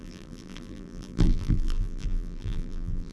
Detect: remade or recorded remade